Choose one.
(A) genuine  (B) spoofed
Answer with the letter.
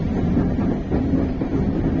A